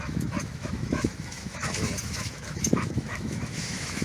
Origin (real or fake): fake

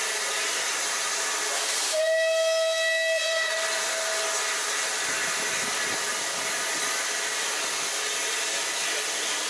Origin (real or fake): real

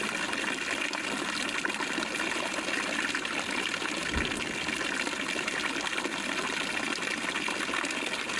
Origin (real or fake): real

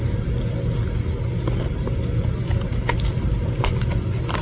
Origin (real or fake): real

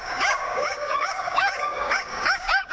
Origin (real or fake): fake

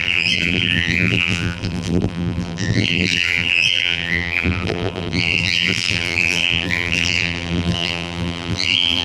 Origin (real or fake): fake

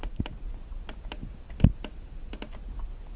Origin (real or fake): real